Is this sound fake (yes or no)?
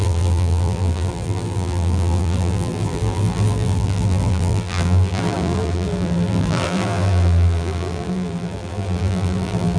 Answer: yes